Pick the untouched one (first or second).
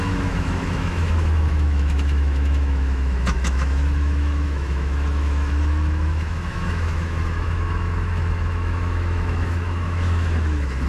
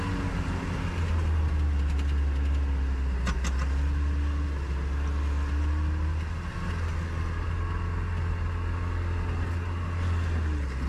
second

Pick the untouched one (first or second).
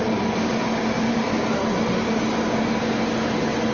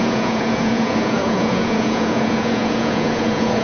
first